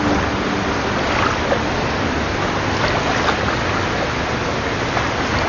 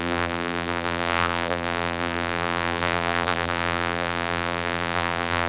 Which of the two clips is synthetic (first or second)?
second